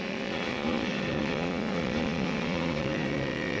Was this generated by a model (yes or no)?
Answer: yes